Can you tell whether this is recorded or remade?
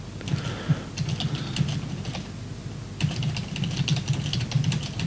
recorded